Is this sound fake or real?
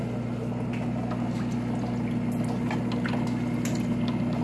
real